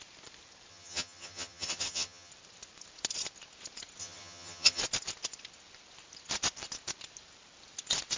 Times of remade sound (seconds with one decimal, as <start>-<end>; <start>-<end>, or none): 0.7-2.3; 4.0-4.8